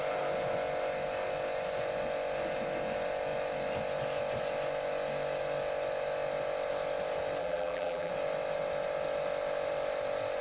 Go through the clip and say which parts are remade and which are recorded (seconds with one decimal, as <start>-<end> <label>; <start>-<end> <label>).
0.0-7.4 recorded; 7.4-8.1 remade; 8.1-10.4 recorded